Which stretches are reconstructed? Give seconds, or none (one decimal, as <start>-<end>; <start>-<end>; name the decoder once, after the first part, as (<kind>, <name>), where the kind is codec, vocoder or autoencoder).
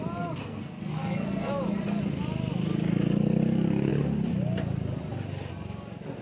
0.4-1.5 (codec, SNAC)